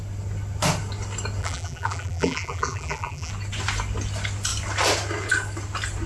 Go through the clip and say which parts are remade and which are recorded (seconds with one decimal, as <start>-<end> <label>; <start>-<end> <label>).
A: 0.0-1.4 recorded; 1.4-3.3 remade; 3.3-6.1 recorded